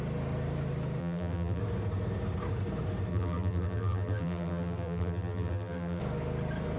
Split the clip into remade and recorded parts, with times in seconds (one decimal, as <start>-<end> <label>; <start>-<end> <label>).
0.0-1.0 recorded; 1.0-1.6 remade; 1.6-3.1 recorded; 3.1-6.0 remade; 6.0-6.8 recorded